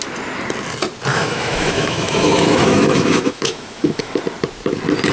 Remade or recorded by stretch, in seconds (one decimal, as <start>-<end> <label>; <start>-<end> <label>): 0.0-1.1 recorded; 1.1-4.2 remade; 4.2-5.1 recorded

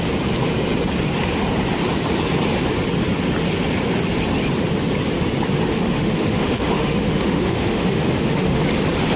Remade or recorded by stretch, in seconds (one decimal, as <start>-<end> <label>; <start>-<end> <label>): 0.0-5.7 recorded; 5.7-8.6 remade; 8.6-9.2 recorded